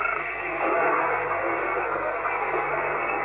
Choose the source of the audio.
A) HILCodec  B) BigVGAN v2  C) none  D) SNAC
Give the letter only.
D